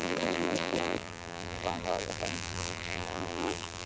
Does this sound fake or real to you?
fake